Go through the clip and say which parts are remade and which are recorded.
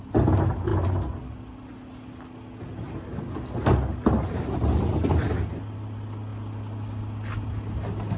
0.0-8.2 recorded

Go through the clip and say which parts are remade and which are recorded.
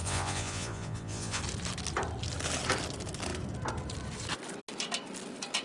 0.0-1.4 remade; 1.4-5.6 recorded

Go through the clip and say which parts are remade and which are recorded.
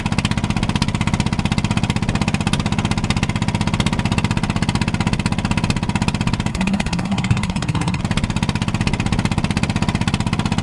0.0-6.5 recorded; 6.5-8.0 remade; 8.0-10.6 recorded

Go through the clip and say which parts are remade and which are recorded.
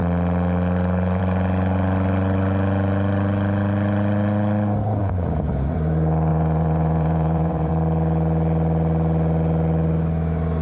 0.0-5.0 recorded; 5.0-5.5 remade; 5.5-6.3 recorded; 6.3-7.7 remade; 7.7-10.6 recorded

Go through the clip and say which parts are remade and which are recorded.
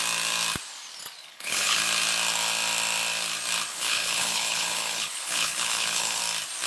0.0-1.2 recorded; 1.2-1.8 remade; 1.8-3.7 recorded; 3.7-6.2 remade; 6.2-6.7 recorded